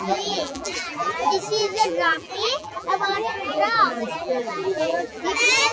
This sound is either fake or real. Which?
fake